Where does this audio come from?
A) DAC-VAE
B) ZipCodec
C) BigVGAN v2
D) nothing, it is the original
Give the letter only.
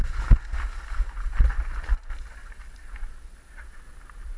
D